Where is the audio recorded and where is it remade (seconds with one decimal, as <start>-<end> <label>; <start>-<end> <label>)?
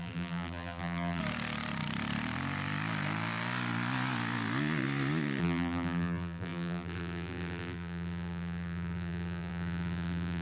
0.0-1.2 remade; 1.2-5.4 recorded; 5.4-10.4 remade